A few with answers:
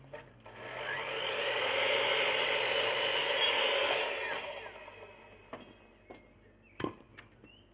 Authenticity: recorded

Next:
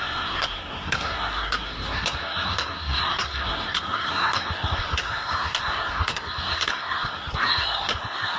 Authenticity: remade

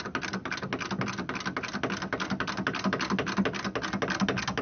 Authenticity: recorded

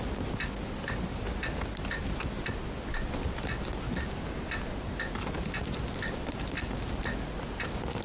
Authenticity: recorded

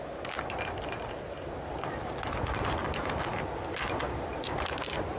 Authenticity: recorded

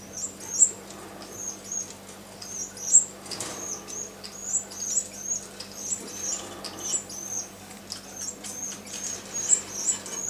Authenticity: recorded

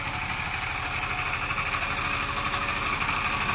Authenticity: recorded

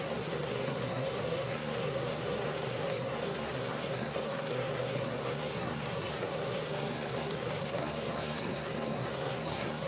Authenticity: remade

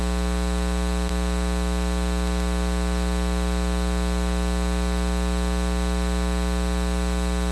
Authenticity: recorded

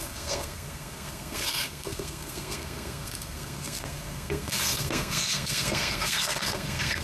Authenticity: remade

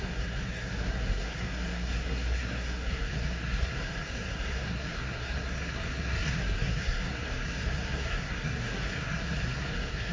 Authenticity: remade